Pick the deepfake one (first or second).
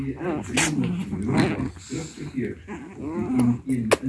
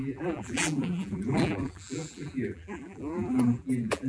second